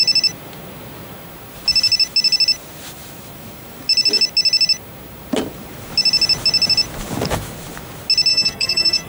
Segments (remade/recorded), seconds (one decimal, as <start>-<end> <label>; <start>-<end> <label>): 0.0-8.3 recorded; 8.3-9.1 remade